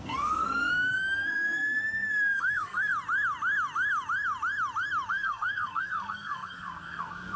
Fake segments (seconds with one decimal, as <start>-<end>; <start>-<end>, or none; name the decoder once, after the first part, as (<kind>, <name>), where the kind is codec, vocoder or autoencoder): 0.0-2.9 (codec, SNAC); 5.1-7.4